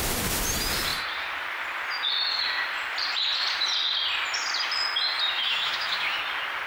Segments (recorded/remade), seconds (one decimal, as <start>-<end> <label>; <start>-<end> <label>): 0.0-5.4 recorded; 5.4-6.2 remade; 6.2-6.7 recorded